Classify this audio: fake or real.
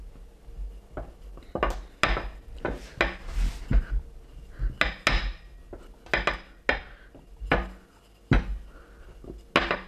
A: real